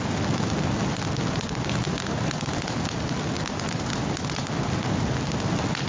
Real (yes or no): yes